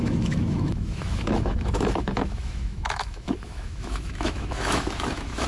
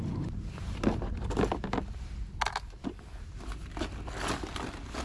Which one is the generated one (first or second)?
first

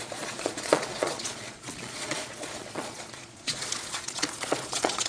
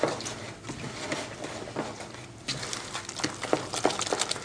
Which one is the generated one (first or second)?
first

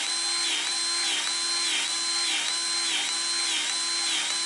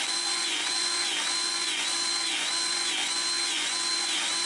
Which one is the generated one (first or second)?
second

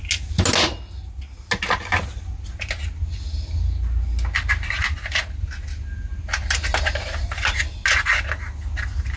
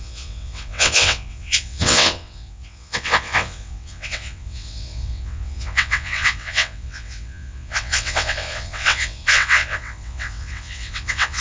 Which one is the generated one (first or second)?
second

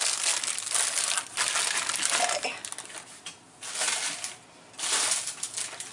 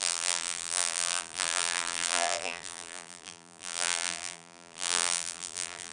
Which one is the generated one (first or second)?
second